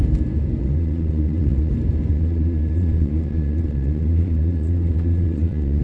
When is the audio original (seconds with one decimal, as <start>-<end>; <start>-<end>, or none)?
0.0-0.6; 1.7-2.1